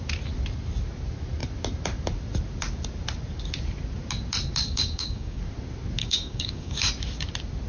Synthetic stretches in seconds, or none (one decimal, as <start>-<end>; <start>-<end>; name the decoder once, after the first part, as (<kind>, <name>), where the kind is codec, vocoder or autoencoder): 4.6-5.4 (codec, DAC); 6.0-6.9